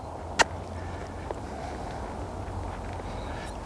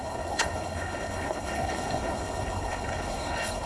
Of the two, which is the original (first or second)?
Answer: first